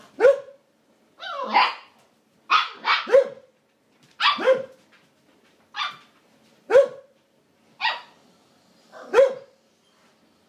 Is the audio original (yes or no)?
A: yes